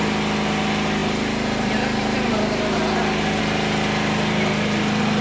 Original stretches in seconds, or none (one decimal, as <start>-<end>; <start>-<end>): 0.0-5.2